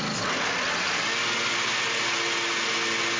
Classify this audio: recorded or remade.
recorded